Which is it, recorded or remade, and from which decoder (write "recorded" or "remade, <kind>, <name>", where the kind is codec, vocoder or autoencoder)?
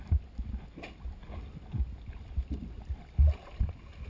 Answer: recorded